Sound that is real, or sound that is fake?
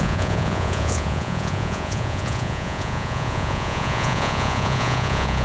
fake